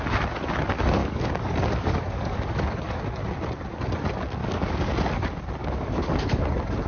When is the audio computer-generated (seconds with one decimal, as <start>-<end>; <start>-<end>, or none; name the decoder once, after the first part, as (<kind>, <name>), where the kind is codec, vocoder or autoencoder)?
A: 1.0-3.0 (codec, DAC); 4.4-5.0; 5.6-6.4